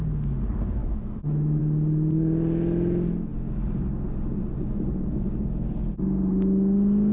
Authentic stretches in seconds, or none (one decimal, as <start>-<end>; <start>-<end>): 0.0-0.8; 1.6-7.1